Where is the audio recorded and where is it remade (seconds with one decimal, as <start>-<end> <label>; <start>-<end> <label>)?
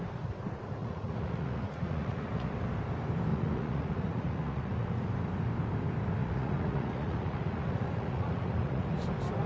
0.0-0.8 recorded; 0.8-2.5 remade; 2.5-3.3 recorded; 3.3-5.1 remade; 5.1-6.2 recorded; 6.2-9.0 remade; 9.0-9.5 recorded